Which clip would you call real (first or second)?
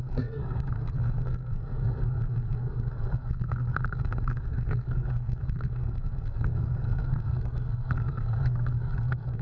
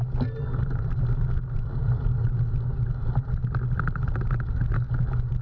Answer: second